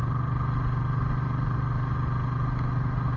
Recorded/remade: recorded